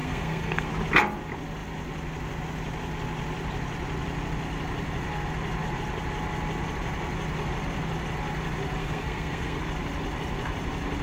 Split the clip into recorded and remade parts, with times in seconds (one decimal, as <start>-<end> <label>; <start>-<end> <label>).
0.0-0.7 remade; 0.7-8.8 recorded; 8.8-9.6 remade; 9.6-11.0 recorded